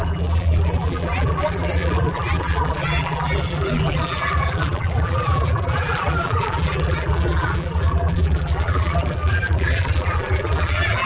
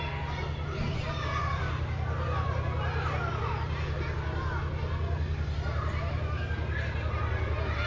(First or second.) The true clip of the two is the second